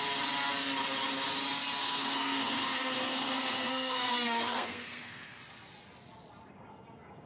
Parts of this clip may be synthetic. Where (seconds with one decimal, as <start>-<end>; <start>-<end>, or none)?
1.8-5.4